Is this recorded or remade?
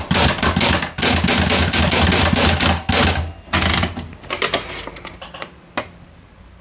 recorded